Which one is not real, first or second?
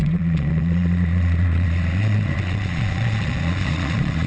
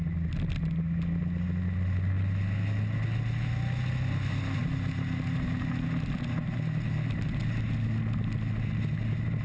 first